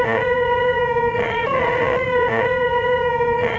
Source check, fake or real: fake